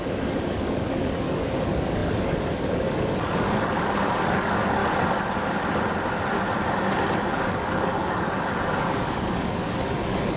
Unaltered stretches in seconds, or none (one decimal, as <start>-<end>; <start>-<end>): 4.8-7.3